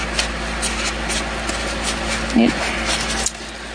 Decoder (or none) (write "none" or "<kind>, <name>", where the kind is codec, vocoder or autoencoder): none